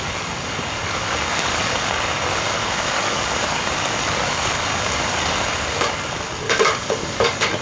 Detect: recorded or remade remade